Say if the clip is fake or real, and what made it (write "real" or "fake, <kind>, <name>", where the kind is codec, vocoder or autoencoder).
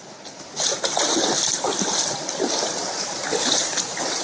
real